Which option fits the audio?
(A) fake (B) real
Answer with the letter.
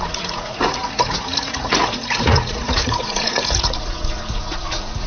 A